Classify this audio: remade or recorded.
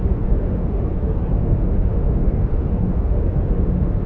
remade